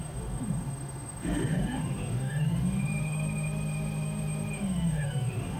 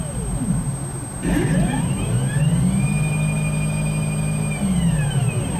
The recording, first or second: second